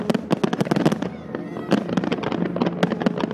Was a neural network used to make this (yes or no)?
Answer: no